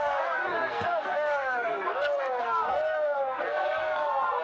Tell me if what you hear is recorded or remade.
remade